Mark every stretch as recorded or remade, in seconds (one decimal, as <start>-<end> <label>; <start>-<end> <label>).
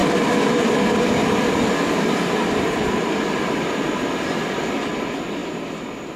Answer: 0.0-6.2 recorded